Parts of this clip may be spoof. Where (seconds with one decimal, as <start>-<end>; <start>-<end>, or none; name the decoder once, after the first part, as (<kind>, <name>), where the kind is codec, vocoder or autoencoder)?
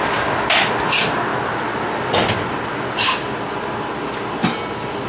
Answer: none